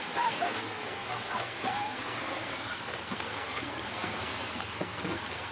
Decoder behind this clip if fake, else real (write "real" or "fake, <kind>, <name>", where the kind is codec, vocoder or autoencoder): fake, codec, SNAC